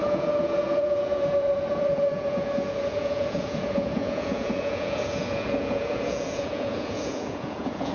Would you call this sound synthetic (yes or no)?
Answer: yes